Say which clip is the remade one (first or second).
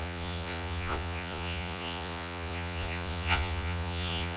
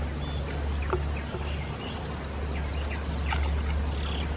first